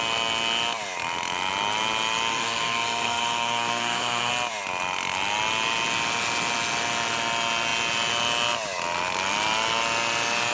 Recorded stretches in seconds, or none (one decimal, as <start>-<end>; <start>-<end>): 0.0-2.3; 4.3-10.5